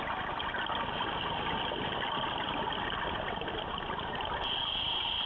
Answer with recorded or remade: recorded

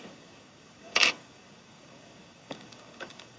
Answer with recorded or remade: remade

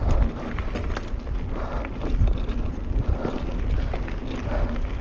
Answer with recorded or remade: recorded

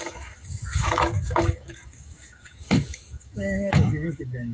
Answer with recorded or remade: remade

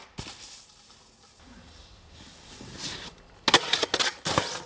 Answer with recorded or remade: recorded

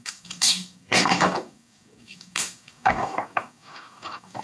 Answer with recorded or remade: remade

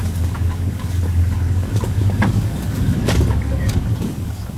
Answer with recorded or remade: remade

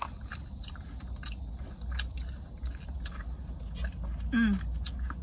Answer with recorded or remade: recorded